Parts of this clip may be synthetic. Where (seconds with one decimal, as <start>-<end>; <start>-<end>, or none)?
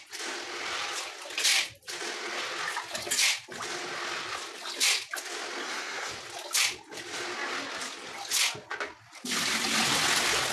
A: 5.6-6.1